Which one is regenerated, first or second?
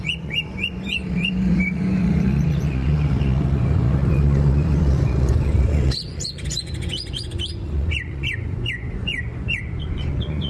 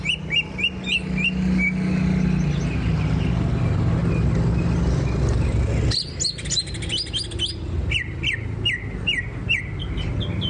first